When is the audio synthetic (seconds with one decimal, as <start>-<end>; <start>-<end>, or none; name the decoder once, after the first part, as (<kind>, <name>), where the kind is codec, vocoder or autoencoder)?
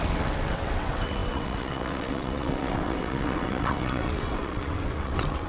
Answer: 0.0-5.5 (vocoder, WaveNeXt)